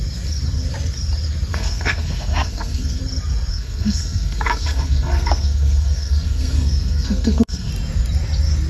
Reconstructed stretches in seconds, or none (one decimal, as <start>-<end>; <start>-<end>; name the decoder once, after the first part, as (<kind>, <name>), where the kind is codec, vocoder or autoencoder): 1.5-3.0 (codec, SNAC); 3.5-7.7